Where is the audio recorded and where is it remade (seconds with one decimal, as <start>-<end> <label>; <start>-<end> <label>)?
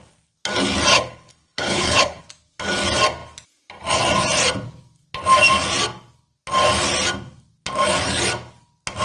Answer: 0.0-0.9 recorded; 0.9-2.2 remade; 2.2-9.0 recorded